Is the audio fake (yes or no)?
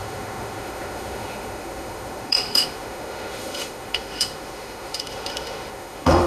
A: yes